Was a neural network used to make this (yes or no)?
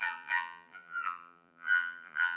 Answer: yes